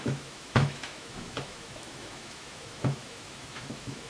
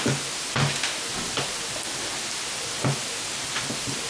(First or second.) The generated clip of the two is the first